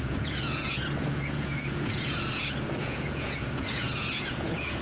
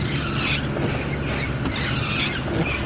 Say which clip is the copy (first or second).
first